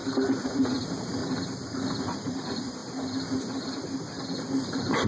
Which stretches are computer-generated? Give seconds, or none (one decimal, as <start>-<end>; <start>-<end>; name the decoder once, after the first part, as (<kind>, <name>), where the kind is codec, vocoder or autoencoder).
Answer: 0.5-1.2 (vocoder, BigVGAN v2); 1.9-2.8